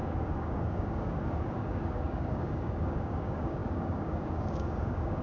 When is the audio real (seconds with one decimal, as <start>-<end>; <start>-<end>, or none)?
none